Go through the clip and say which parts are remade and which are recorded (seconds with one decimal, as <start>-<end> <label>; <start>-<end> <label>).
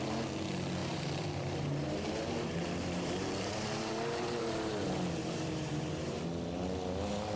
0.0-0.8 recorded; 0.8-4.8 remade; 4.8-5.2 recorded; 5.2-6.2 remade; 6.2-7.4 recorded